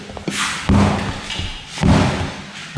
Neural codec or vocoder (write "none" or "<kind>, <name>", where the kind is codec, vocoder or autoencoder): none